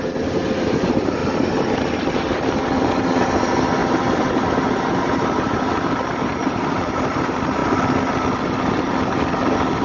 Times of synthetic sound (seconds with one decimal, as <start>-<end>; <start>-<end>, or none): 0.0-1.2; 2.3-7.6